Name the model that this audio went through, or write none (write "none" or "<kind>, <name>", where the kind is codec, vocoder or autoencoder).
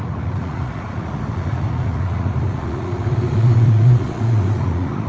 vocoder, Vocos